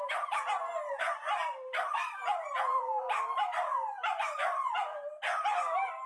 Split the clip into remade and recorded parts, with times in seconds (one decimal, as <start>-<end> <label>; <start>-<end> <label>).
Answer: 0.0-0.4 remade; 0.4-0.9 recorded; 0.9-6.1 remade